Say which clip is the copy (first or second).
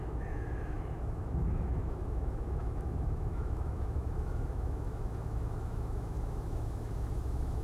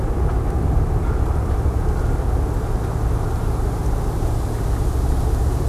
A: first